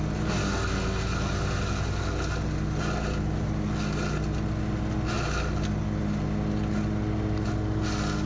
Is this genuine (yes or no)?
yes